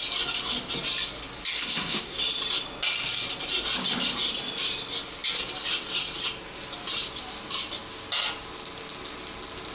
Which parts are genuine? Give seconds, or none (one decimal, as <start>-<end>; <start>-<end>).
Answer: 0.0-1.5; 2.2-9.7